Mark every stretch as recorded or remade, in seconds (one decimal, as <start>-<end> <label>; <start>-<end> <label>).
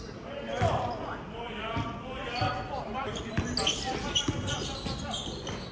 0.0-2.4 remade; 2.4-5.7 recorded